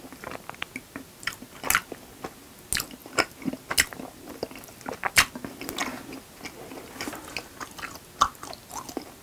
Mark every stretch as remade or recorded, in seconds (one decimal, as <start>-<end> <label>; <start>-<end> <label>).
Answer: 0.0-9.2 recorded